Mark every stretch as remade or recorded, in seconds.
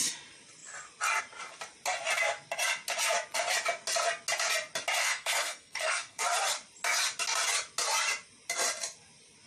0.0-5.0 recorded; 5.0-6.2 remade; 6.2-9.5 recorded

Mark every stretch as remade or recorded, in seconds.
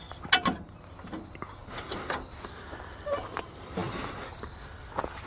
0.0-5.3 recorded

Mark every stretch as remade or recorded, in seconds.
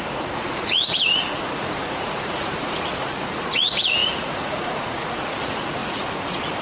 0.0-6.6 remade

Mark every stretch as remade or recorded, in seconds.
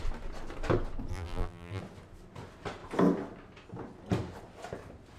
0.0-1.1 recorded; 1.1-1.8 remade; 1.8-5.2 recorded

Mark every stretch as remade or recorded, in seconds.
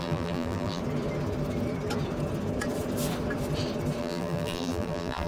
0.0-0.8 remade; 0.8-4.0 recorded; 4.0-5.3 remade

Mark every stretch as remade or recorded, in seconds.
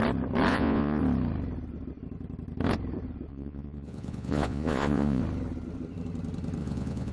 0.0-0.5 recorded; 0.5-1.0 remade; 1.0-3.3 recorded; 3.3-5.2 remade; 5.2-6.6 recorded; 6.6-7.1 remade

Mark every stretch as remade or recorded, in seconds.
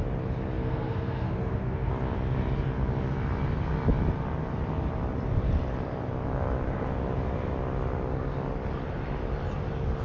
0.0-0.6 recorded; 0.6-1.9 remade; 1.9-10.0 recorded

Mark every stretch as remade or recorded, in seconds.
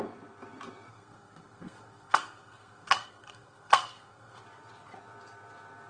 0.0-0.9 recorded; 0.9-4.4 remade; 4.4-5.9 recorded